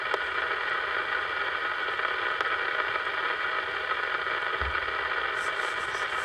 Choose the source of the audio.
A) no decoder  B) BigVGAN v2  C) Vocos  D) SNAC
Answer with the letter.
A